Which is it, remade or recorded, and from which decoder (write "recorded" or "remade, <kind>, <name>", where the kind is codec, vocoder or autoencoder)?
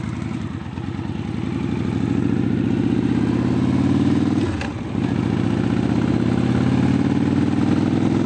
recorded